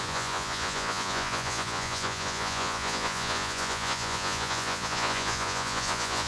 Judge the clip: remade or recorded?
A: remade